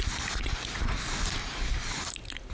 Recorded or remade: recorded